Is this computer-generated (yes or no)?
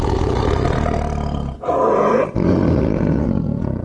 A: no